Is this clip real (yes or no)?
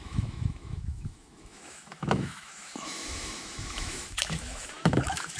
no